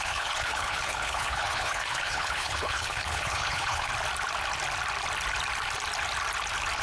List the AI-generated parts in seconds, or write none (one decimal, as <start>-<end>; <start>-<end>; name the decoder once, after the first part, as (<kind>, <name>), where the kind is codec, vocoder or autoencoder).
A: 0.0-3.9 (codec, HILCodec)